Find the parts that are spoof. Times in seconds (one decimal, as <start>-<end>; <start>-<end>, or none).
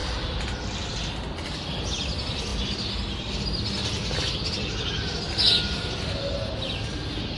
none